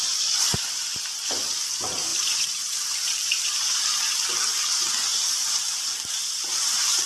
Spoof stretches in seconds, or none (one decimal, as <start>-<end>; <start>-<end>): 2.1-4.0; 5.1-5.9